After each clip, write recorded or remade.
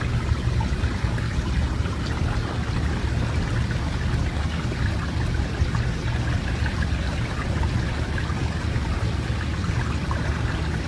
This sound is recorded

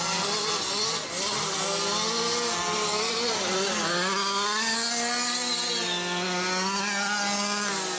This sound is recorded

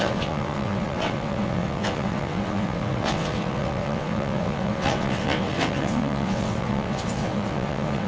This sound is remade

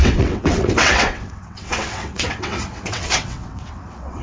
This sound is remade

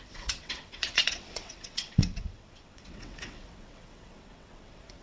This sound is remade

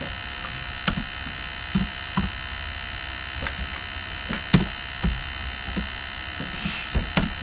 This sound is recorded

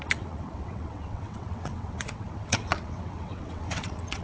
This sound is remade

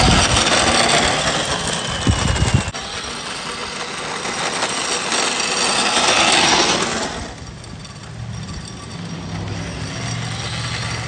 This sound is recorded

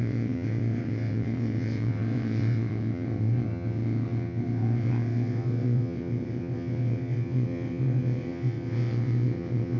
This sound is remade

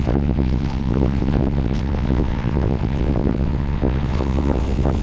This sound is remade